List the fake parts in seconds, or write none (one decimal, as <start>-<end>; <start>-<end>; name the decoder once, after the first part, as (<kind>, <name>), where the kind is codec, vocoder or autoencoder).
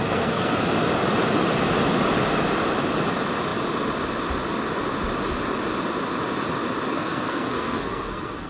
0.0-0.6 (codec, SNAC); 6.9-8.5